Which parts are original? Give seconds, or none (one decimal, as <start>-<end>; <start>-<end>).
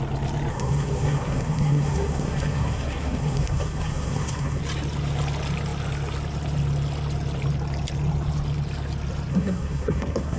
0.0-0.5; 4.6-9.3